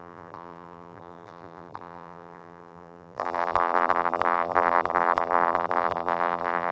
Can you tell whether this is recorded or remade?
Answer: remade